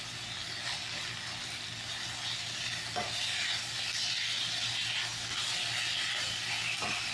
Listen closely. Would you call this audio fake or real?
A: real